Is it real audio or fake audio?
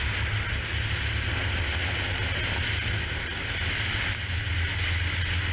real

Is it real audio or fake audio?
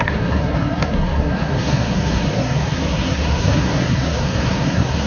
fake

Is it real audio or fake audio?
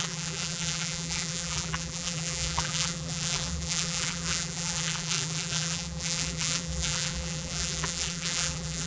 fake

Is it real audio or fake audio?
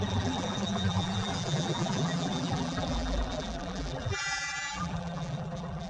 fake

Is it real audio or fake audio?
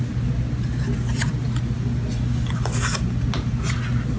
real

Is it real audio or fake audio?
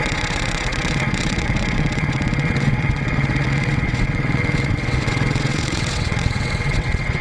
fake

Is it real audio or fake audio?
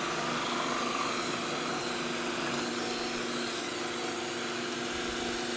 real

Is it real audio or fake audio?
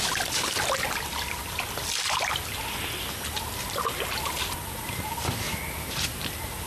real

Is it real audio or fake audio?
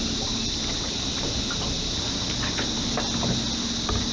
real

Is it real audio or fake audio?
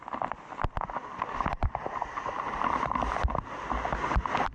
real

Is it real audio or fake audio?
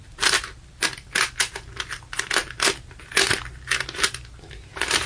real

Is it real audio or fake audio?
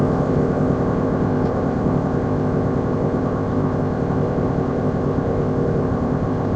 fake